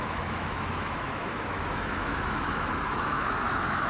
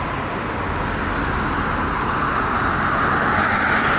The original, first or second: second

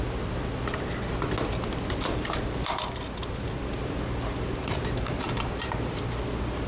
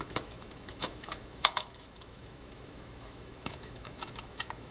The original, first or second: first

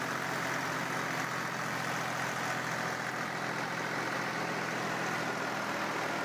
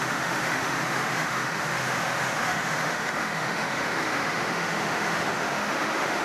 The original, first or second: first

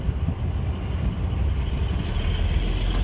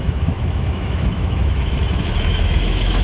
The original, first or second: first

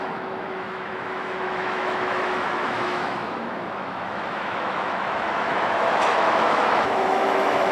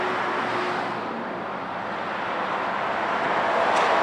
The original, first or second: second